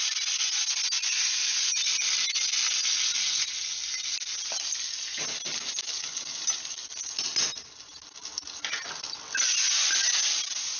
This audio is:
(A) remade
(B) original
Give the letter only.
B